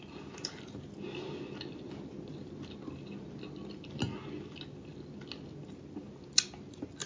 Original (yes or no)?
yes